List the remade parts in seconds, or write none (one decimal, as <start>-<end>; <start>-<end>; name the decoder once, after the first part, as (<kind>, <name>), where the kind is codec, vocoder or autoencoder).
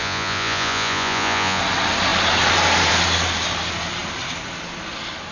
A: 0.0-1.6 (vocoder, Vocos)